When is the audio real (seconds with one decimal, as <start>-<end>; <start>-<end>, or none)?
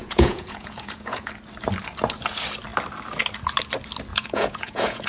1.3-4.1